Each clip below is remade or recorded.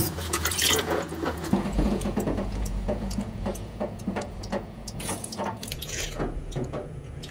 remade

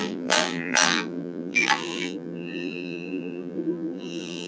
remade